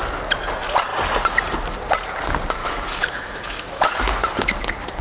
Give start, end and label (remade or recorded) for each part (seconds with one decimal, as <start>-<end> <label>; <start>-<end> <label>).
0.0-2.6 recorded; 2.6-4.0 remade; 4.0-5.0 recorded